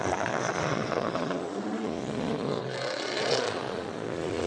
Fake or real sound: fake